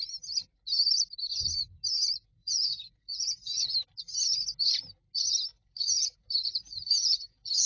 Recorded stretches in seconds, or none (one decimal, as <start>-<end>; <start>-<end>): 0.0-2.4; 3.7-5.5